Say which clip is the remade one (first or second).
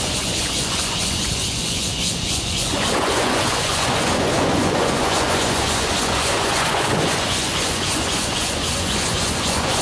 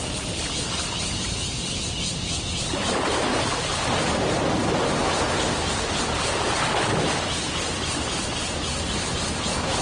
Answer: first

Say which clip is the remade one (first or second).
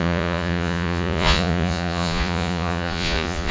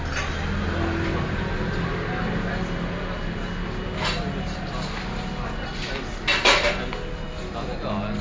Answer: first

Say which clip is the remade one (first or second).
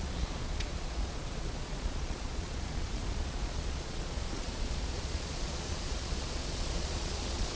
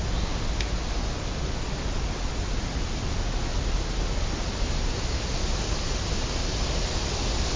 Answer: first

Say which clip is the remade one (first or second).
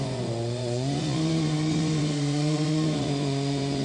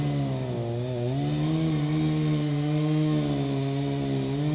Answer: first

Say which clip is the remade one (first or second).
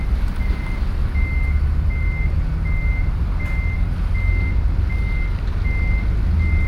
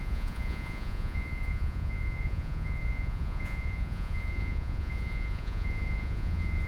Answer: second